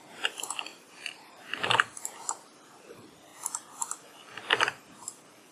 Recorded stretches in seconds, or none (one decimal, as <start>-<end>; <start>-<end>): 3.3-4.4